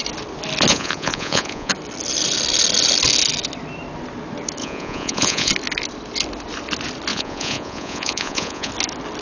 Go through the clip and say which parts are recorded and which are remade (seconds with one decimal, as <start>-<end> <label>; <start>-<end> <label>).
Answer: 0.0-0.7 recorded; 0.7-1.7 remade; 1.7-4.6 recorded; 4.6-5.5 remade; 5.5-7.1 recorded; 7.1-8.7 remade; 8.7-9.2 recorded